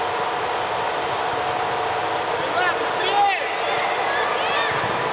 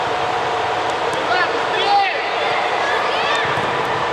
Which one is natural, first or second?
first